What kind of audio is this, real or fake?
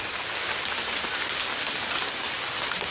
real